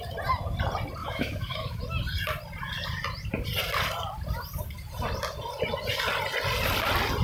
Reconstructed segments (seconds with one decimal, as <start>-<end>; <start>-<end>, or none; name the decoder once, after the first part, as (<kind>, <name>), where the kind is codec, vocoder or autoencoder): 1.0-1.8 (autoencoder, DAC-VAE)